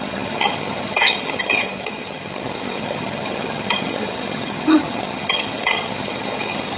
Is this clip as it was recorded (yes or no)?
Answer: no